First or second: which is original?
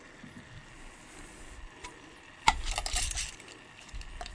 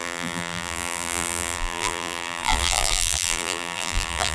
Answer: first